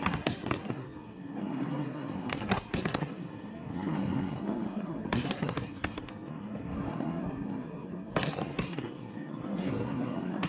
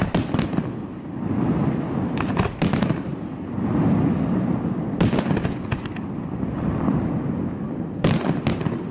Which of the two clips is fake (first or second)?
first